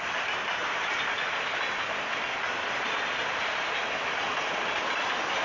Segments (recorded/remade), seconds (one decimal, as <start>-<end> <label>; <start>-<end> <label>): 0.0-5.4 recorded